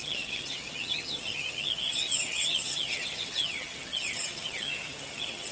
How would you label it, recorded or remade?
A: remade